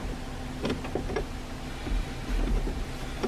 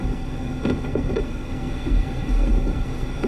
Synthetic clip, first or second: second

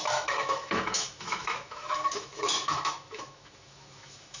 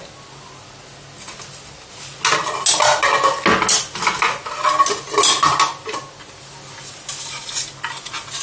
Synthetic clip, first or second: first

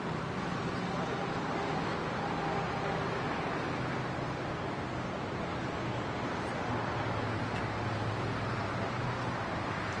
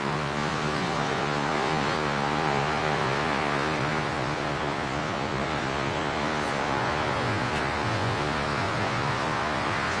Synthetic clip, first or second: second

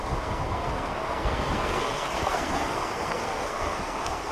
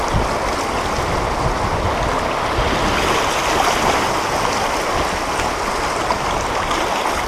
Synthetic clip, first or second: first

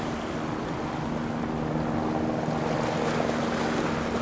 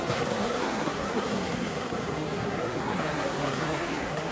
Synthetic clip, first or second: second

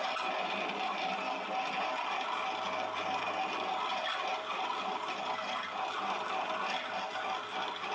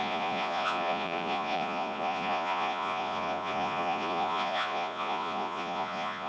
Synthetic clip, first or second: second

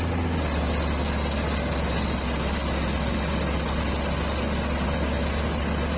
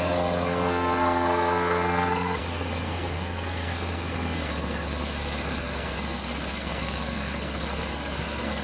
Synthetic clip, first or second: second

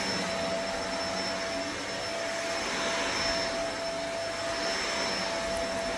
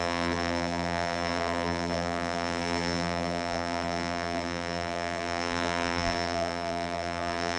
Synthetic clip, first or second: second